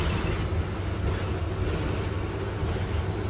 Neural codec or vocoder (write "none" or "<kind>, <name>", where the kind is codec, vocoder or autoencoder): none